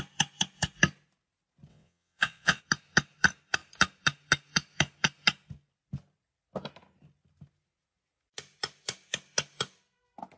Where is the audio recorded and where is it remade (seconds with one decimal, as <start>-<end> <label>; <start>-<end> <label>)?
0.0-1.7 recorded; 1.7-2.6 remade; 2.6-10.4 recorded